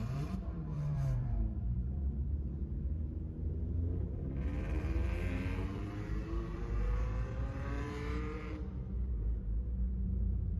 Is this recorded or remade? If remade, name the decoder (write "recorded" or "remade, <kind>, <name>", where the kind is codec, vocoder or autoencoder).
remade, vocoder, BigVGAN v2